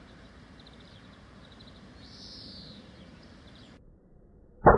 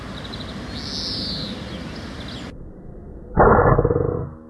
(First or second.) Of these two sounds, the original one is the second